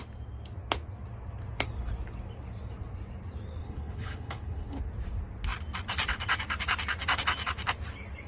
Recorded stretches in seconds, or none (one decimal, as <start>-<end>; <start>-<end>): 0.0-3.6; 4.8-8.3